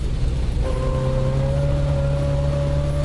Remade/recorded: recorded